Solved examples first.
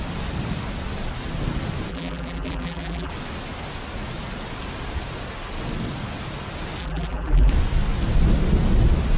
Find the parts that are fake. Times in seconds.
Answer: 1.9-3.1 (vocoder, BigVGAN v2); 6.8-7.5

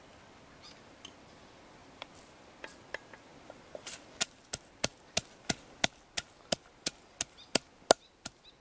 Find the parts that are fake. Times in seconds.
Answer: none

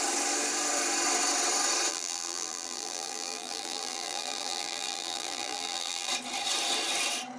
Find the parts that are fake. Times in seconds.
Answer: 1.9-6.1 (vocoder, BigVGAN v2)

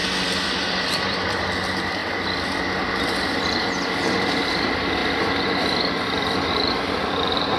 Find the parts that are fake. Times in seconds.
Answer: 0.0-2.0 (vocoder, BigVGAN v2); 3.4-5.0; 6.7-7.6

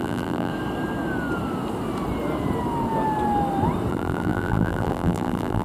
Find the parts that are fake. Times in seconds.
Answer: 0.0-0.5 (vocoder, BigVGAN v2); 3.9-5.6